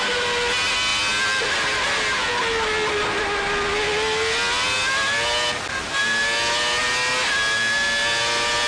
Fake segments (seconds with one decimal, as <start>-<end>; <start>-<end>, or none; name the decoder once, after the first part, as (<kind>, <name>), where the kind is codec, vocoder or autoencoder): none